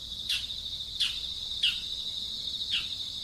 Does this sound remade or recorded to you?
recorded